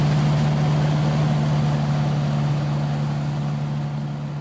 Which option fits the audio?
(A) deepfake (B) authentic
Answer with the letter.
B